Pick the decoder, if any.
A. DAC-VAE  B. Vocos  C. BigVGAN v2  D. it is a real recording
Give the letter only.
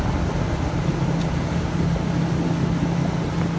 D